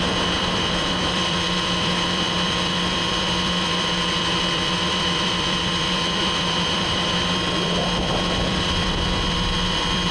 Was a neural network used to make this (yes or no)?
yes